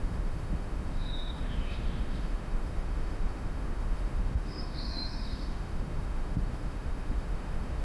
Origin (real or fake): fake